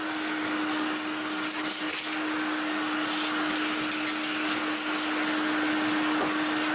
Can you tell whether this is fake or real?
real